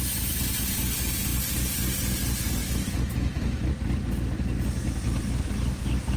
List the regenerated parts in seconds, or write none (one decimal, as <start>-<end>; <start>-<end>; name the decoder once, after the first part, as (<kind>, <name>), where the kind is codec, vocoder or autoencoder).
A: 2.6-3.7 (autoencoder, DAC-VAE)